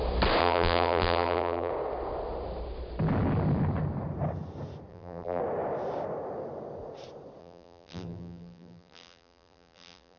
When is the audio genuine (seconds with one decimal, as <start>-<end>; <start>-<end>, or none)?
0.0-0.4; 1.7-4.9; 5.4-7.4